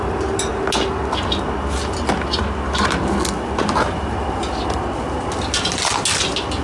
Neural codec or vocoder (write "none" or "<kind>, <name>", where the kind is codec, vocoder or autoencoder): none